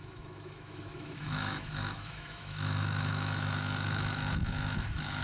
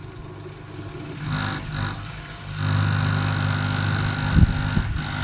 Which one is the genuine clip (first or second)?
second